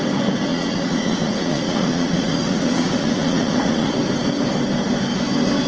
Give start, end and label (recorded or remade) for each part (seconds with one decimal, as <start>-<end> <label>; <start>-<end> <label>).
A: 0.0-0.5 recorded; 0.5-3.9 remade; 3.9-5.7 recorded